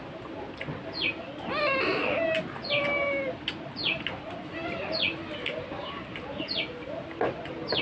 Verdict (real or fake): real